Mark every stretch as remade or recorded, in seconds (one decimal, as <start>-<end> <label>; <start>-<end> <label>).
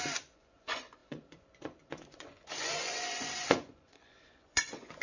0.0-5.0 remade